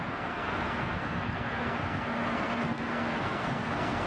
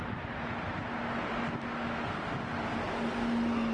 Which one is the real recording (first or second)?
second